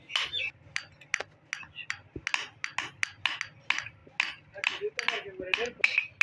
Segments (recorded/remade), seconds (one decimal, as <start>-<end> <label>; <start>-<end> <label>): 0.0-6.2 recorded